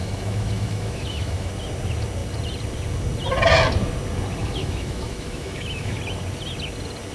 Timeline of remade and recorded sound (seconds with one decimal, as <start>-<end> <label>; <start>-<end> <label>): 0.0-1.5 remade; 1.5-4.4 recorded; 4.4-6.0 remade; 6.0-7.1 recorded